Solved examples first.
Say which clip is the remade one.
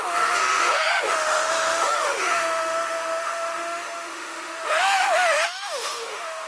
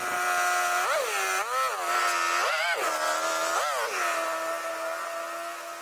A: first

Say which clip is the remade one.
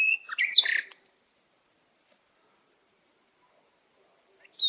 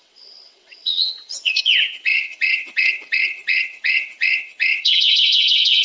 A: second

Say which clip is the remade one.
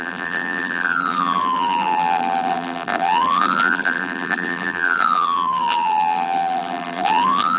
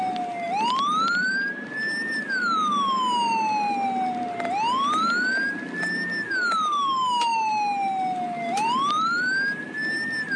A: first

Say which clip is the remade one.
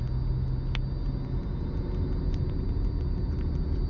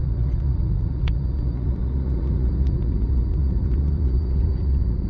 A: second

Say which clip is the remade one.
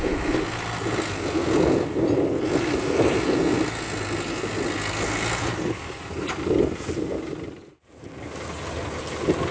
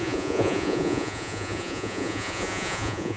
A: second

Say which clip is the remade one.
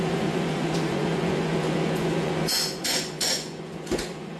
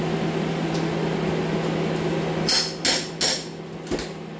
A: first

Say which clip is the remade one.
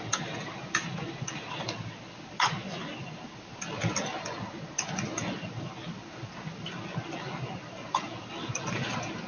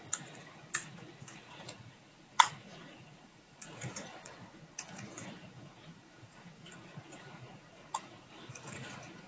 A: second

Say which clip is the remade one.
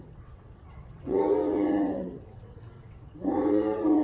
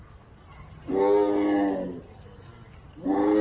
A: first